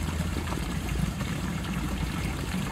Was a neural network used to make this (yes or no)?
yes